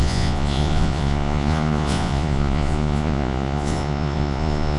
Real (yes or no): no